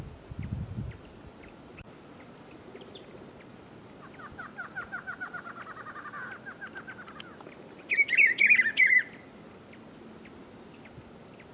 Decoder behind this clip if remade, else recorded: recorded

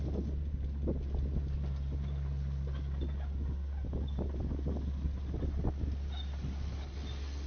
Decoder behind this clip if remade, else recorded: recorded